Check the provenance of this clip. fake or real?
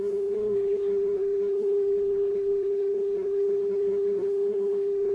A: fake